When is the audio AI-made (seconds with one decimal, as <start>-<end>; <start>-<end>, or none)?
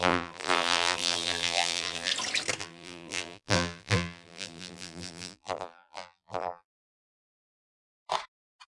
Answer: 0.0-2.1; 2.6-7.7